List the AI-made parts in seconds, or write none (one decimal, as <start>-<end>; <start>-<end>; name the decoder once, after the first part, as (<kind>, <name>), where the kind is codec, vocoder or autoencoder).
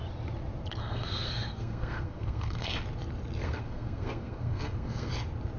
0.8-2.7 (codec, SNAC); 3.4-5.1